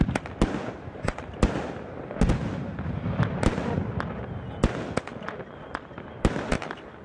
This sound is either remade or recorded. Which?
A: recorded